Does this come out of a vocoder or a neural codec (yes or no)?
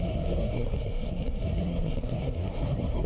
yes